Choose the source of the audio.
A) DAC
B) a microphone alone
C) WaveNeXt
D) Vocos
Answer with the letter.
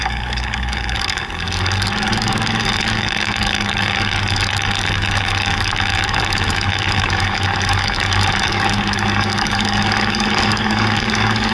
A